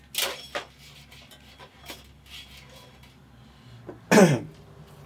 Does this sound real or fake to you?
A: real